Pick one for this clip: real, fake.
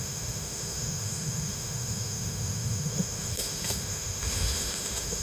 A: fake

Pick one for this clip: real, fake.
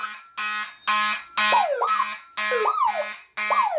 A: real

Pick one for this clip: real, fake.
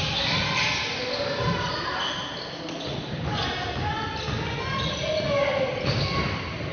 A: real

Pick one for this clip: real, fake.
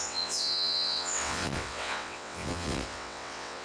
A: fake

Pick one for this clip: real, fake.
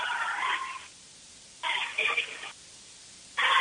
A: real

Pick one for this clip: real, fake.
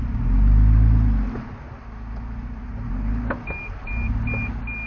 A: real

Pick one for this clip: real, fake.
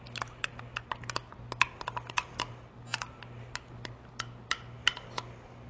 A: real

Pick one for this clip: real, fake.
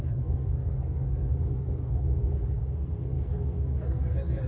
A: fake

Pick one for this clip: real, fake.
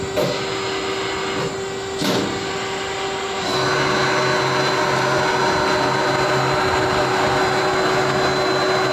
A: real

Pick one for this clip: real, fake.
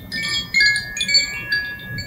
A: real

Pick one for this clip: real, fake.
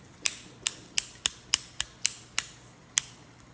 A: real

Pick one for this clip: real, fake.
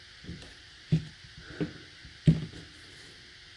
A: real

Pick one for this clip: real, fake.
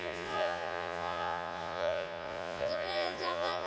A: fake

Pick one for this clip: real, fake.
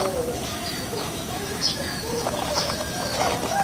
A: fake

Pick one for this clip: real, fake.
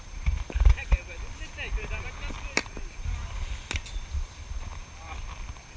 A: real